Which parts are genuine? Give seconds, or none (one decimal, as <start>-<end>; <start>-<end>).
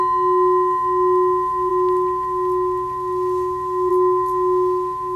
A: 0.0-5.2